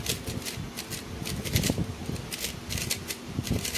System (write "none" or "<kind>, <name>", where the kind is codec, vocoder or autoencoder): none